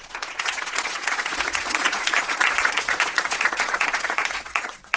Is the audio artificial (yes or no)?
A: yes